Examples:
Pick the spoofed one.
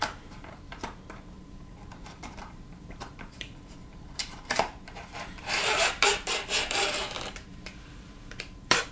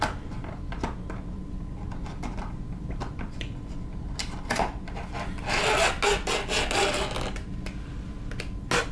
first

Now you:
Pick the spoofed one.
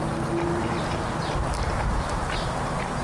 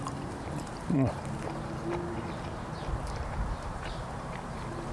second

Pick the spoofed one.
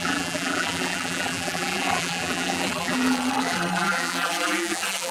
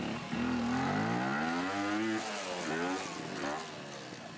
first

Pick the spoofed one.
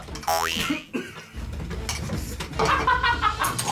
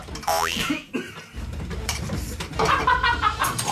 second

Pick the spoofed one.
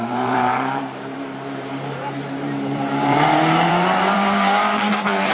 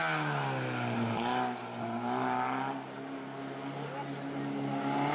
first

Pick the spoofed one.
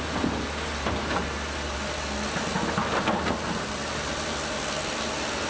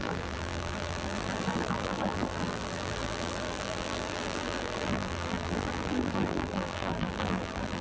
second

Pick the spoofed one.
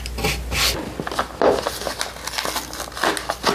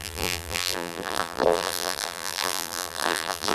second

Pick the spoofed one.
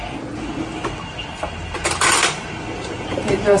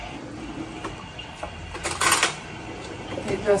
second